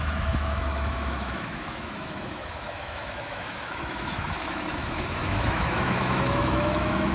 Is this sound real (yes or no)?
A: no